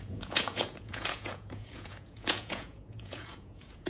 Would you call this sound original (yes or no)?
no